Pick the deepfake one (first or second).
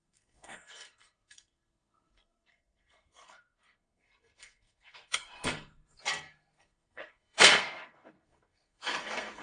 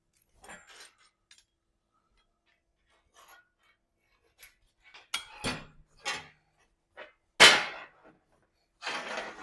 first